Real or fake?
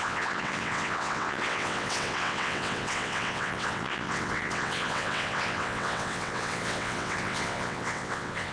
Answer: fake